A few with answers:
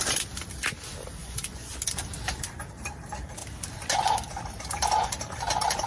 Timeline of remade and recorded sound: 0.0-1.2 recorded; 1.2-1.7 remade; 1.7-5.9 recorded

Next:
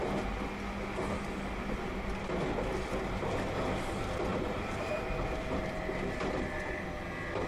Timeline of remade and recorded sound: 0.0-4.3 recorded; 4.3-4.9 remade; 4.9-7.5 recorded